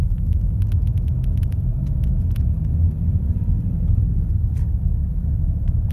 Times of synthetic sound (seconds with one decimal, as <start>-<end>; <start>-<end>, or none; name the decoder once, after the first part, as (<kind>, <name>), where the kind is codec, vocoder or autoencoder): 0.8-3.5 (vocoder, Vocos)